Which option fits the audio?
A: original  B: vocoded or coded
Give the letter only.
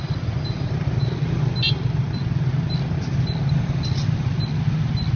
A